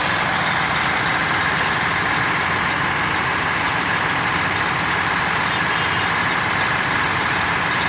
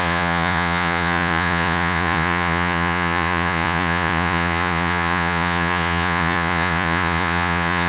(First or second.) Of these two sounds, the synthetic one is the second